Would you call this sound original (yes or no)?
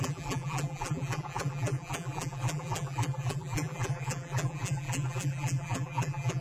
no